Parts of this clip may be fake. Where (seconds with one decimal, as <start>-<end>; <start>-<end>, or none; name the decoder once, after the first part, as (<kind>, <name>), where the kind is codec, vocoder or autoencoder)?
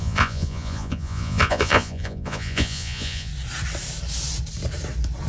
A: 0.0-3.3 (vocoder, Vocos)